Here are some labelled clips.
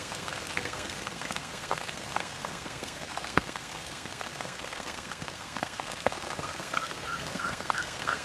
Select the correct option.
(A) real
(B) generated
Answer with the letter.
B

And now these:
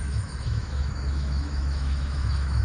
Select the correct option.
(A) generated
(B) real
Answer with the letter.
A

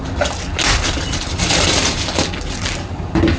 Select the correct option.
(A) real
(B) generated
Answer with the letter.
A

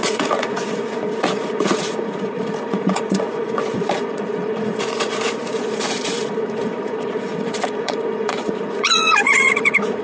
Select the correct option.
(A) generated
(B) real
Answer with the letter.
A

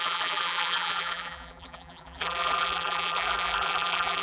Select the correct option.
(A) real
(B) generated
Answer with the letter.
B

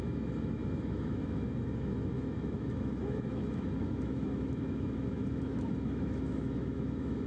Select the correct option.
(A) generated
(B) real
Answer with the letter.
A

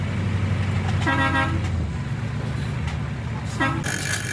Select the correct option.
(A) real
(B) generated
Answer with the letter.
A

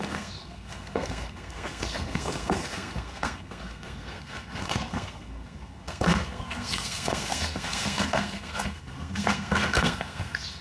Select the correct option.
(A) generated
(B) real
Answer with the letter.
A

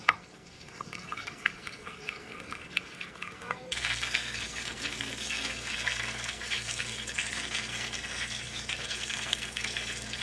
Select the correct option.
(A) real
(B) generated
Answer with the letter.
B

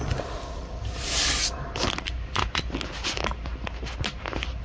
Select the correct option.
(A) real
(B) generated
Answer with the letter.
A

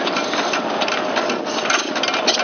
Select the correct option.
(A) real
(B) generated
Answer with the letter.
A